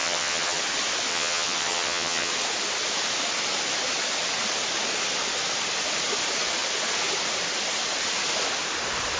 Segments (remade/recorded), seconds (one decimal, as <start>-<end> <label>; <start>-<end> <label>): 0.0-0.6 remade; 0.6-1.1 recorded; 1.1-2.3 remade; 2.3-9.2 recorded